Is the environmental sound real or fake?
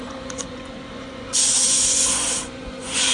fake